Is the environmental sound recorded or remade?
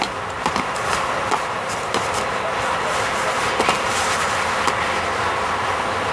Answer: recorded